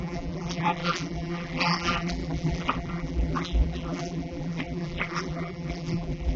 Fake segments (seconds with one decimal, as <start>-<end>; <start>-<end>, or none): 0.0-6.4